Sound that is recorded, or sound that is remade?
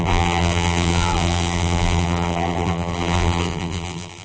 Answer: remade